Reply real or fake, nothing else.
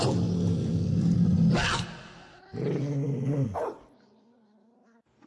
real